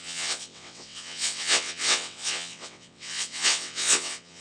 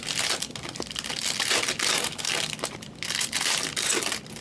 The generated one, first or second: first